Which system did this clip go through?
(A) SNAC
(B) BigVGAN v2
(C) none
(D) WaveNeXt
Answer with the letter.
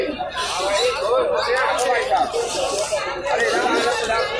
C